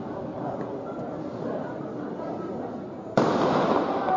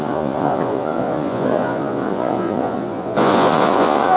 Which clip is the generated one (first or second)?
second